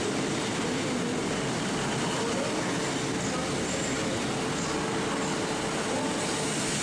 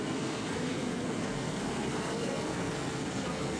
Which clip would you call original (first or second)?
first